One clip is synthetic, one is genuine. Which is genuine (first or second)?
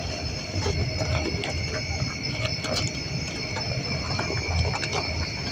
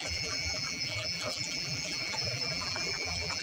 first